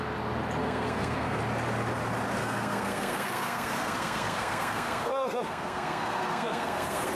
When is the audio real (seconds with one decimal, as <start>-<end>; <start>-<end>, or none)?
0.0-0.6; 1.4-2.4